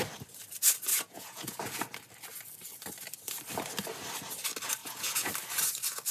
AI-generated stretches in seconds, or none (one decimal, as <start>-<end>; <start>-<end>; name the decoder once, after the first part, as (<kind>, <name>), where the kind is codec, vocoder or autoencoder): 0.9-1.6 (vocoder, Vocos); 4.8-5.3